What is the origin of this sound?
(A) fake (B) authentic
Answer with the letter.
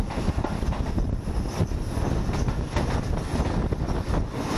B